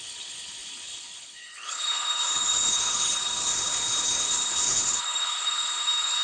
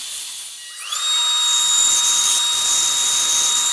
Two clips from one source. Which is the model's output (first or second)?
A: first